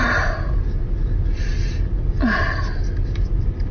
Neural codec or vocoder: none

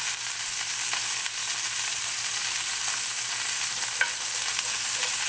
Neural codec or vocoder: none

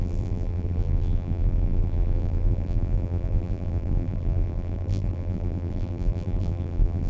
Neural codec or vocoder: vocoder, BigVGAN v2